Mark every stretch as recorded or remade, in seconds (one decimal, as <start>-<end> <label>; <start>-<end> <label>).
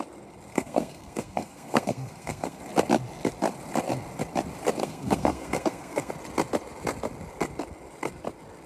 0.0-0.5 recorded; 0.5-2.6 remade; 2.6-4.8 recorded; 4.8-6.1 remade; 6.1-8.7 recorded